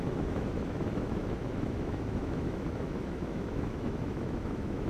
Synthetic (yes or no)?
yes